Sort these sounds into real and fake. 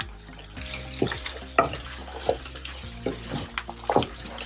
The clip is real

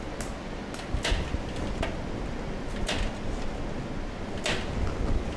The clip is real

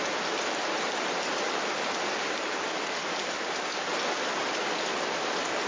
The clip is real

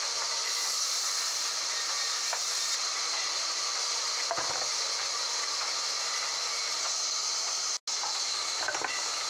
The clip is real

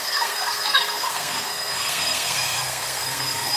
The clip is fake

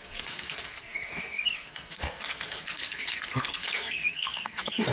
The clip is fake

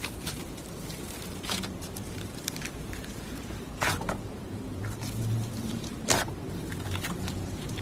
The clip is fake